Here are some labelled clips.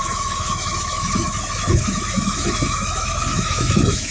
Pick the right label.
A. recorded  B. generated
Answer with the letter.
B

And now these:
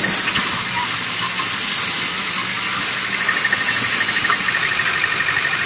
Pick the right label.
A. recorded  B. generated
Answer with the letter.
A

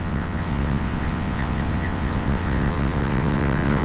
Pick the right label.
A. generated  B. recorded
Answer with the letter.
A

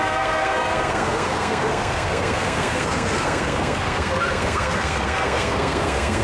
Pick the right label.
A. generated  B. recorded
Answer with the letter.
A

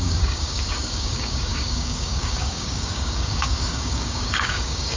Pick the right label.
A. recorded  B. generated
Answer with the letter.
B